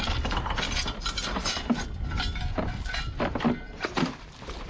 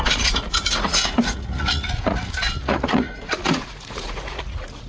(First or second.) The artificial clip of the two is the second